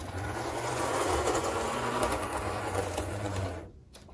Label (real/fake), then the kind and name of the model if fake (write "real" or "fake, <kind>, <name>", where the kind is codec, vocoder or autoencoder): fake, vocoder, Vocos